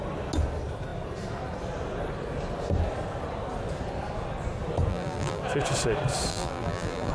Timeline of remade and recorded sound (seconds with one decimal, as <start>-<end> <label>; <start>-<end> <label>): 0.0-4.9 recorded; 4.9-5.4 remade; 5.4-6.3 recorded; 6.3-7.1 remade